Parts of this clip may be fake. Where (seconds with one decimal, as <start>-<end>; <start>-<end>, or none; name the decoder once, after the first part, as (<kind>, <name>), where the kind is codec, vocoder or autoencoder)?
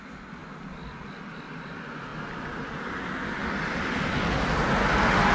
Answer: none